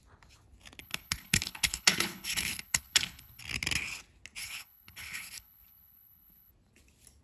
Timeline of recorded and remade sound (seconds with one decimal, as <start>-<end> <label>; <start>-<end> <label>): 0.0-0.8 recorded; 0.8-3.4 remade; 3.4-4.4 recorded; 4.4-6.5 remade; 6.5-7.2 recorded